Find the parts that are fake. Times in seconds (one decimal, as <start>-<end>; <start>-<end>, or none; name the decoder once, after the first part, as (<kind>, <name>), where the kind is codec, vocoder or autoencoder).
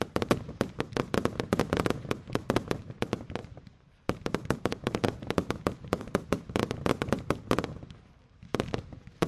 3.4-6.0 (vocoder, BigVGAN v2)